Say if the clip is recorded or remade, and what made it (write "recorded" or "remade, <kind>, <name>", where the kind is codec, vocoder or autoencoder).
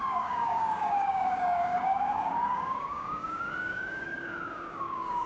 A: remade, codec, DAC